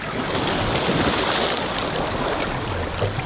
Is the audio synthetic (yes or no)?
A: no